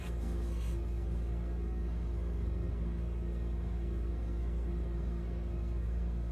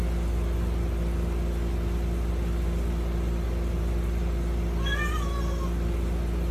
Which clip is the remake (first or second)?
first